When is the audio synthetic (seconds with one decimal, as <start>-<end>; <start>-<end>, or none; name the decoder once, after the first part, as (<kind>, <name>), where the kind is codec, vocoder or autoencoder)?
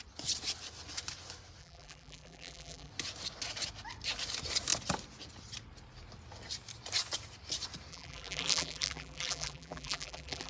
1.6-2.9 (vocoder, BigVGAN v2); 7.9-10.5